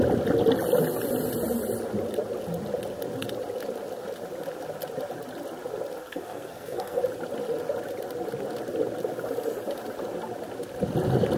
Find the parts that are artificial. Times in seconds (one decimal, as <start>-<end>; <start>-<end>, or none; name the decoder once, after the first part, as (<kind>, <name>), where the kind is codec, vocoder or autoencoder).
6.0-7.0 (codec, SNAC)